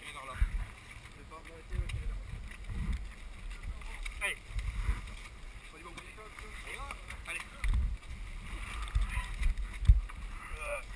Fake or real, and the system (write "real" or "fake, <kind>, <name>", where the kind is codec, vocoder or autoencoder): real